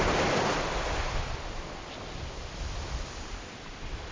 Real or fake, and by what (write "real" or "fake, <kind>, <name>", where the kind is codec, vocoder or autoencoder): real